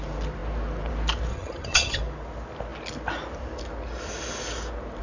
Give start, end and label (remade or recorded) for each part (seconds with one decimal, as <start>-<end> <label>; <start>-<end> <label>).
0.0-1.3 recorded; 1.3-2.0 remade; 2.0-5.0 recorded